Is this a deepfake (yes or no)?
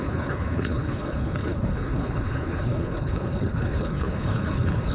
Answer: yes